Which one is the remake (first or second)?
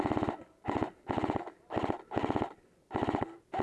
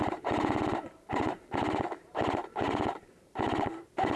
second